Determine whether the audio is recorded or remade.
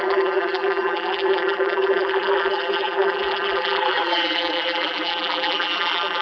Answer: remade